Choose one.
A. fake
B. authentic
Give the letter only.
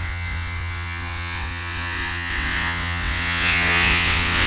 A